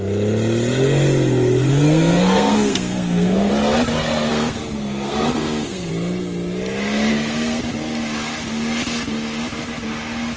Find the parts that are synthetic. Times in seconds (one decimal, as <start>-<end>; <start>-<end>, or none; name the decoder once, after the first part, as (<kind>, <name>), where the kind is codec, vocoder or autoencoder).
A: 1.7-3.5 (codec, SNAC); 4.3-5.9; 7.1-7.6